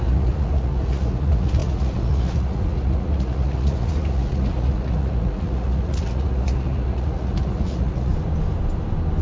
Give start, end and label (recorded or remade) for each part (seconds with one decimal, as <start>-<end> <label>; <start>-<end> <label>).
0.0-8.1 remade; 8.1-9.2 recorded